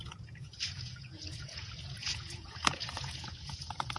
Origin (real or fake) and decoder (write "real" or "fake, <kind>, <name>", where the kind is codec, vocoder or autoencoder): fake, vocoder, Vocos